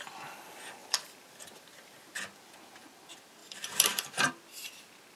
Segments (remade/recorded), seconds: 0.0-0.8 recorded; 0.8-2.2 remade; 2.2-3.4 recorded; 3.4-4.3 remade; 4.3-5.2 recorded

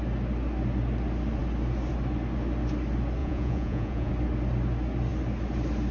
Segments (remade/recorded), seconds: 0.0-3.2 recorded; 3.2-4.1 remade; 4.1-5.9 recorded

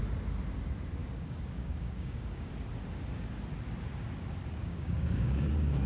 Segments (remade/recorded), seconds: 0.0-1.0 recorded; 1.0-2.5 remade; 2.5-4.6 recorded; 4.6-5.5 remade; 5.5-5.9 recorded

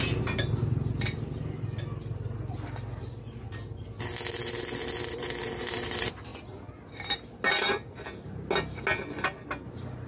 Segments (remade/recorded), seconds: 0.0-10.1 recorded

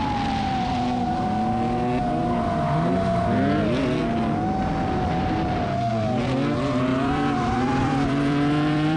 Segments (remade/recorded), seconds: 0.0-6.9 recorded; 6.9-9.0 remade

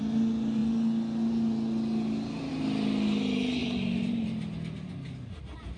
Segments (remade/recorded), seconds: 0.0-3.6 recorded; 3.6-4.4 remade; 4.4-5.8 recorded